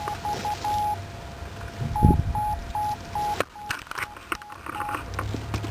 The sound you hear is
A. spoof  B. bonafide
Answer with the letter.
B